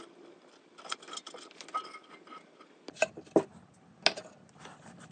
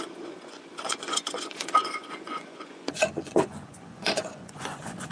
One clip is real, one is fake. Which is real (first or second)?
first